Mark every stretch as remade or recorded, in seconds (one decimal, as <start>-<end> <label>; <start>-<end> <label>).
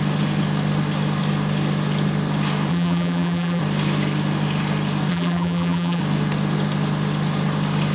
0.0-2.7 recorded; 2.7-3.6 remade; 3.6-5.1 recorded; 5.1-6.0 remade; 6.0-7.9 recorded